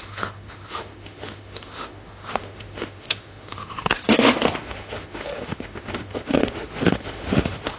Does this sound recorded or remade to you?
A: remade